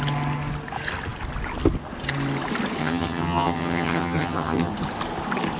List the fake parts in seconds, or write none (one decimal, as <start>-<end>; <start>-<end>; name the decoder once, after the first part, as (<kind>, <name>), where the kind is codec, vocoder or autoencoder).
2.8-4.7 (vocoder, HiFi-GAN)